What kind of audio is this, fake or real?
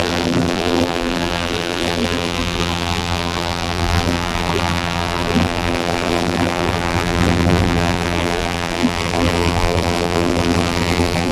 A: fake